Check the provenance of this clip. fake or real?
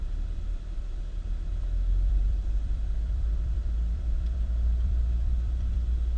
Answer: fake